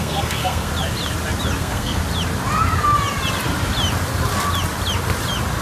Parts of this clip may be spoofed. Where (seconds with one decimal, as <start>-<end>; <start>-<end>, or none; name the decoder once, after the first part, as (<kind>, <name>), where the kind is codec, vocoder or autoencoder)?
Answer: 0.0-0.7 (codec, SNAC); 1.6-2.0